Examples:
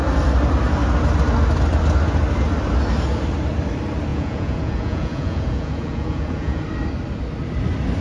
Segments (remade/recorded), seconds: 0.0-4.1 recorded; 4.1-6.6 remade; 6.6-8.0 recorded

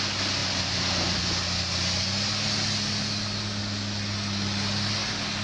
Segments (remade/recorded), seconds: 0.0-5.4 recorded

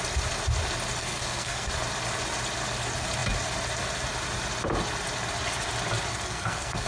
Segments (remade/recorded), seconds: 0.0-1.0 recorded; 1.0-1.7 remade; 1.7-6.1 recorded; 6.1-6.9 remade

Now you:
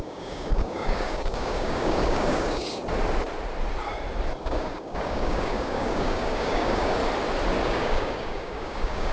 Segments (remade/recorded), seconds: 0.0-2.8 remade; 2.8-4.4 recorded; 4.4-7.0 remade; 7.0-7.6 recorded; 7.6-9.1 remade

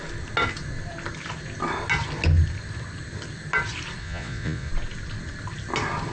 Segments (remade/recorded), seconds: 0.0-4.0 recorded; 4.0-4.7 remade; 4.7-6.1 recorded